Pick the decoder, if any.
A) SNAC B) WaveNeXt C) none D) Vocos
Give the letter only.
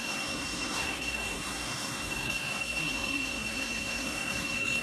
A